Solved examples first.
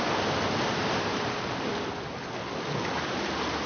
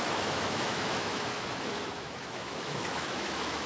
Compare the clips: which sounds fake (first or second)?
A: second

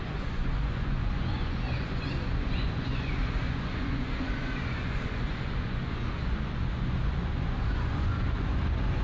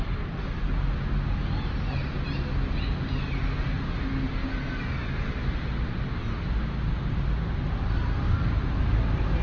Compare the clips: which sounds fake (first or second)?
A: first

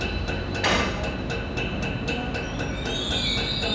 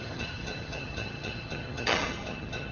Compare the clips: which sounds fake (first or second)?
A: second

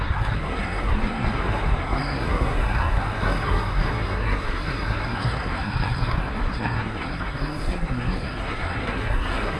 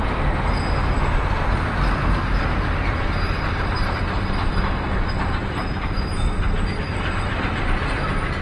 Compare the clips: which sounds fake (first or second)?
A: first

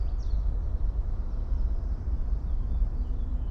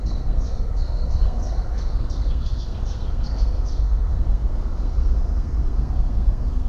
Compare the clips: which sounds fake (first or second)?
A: second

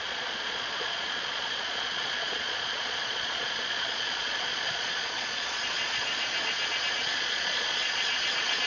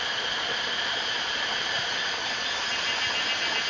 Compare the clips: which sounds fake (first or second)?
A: first